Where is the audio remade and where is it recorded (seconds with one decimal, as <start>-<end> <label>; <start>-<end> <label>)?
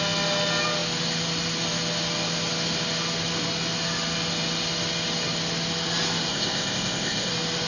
0.0-6.3 recorded; 6.3-7.3 remade; 7.3-7.7 recorded